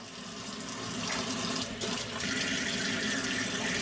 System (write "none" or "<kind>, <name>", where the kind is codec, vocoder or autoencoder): none